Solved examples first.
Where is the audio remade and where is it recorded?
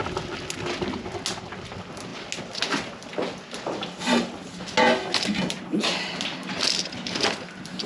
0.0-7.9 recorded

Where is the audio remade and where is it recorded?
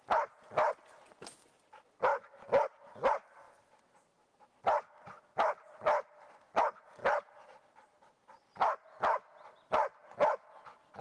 0.0-11.0 recorded